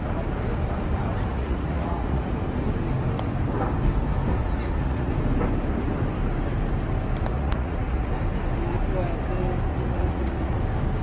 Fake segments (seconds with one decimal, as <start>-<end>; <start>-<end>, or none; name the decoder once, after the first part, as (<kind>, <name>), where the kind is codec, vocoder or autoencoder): 1.3-2.3 (vocoder, Vocos); 4.3-5.1; 7.3-8.1; 9.7-10.6

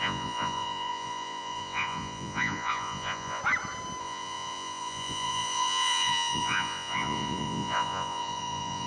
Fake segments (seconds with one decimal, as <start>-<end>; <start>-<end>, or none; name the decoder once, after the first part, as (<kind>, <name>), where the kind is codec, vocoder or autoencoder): 0.0-3.4 (vocoder, Vocos); 4.0-8.9

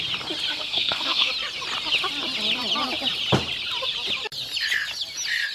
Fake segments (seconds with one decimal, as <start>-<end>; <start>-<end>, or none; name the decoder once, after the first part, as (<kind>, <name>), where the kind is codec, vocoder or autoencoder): 0.5-1.3 (codec, SNAC)

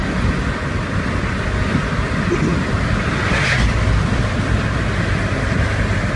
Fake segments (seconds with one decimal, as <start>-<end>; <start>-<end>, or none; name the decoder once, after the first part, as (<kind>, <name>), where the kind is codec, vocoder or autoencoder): 0.0-0.6 (vocoder, BigVGAN v2); 2.5-3.1

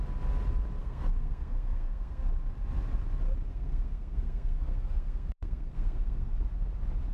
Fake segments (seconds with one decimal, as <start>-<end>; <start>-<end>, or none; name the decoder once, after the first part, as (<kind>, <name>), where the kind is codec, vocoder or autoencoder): 0.8-2.2 (codec, SNAC); 3.5-6.3